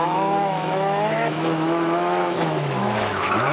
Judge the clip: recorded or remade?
remade